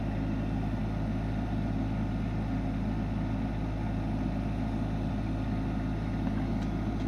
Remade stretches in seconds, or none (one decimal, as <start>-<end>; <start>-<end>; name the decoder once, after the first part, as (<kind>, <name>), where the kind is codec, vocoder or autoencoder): none